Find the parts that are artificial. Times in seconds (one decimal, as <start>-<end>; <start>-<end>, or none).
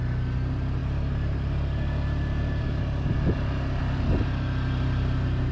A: none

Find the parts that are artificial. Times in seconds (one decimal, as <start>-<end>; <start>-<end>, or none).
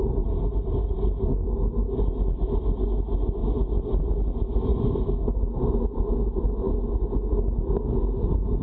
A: none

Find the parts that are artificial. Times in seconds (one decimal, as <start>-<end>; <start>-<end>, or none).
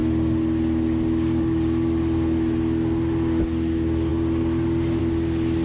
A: none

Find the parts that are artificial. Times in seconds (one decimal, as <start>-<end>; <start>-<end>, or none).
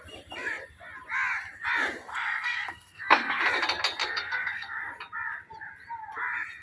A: 2.1-3.4; 4.0-4.8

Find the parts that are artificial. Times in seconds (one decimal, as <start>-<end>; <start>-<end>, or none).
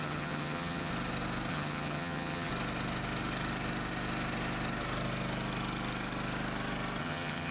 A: 0.0-0.9; 1.5-2.5; 7.0-7.5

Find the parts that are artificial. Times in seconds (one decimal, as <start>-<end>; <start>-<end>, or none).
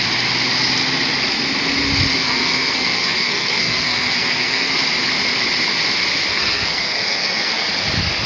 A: 2.2-4.7; 6.3-7.6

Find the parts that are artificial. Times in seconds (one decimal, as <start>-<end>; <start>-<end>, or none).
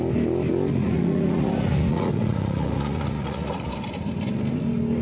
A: 0.7-3.7